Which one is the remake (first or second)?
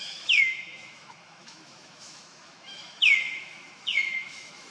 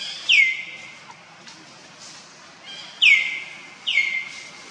first